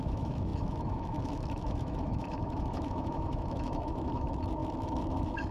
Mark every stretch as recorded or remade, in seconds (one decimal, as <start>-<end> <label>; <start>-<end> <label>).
0.0-5.5 remade